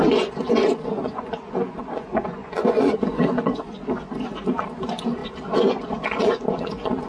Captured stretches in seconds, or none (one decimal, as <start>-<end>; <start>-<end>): 5.2-6.2